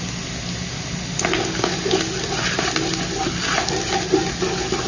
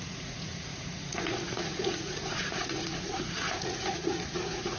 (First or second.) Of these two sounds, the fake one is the second